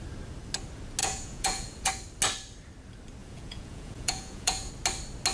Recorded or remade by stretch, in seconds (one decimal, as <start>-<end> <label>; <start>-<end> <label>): 0.0-1.0 recorded; 1.0-1.9 remade; 1.9-3.2 recorded; 3.2-4.7 remade; 4.7-5.3 recorded